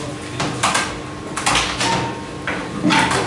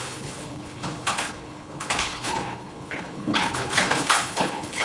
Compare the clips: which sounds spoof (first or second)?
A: second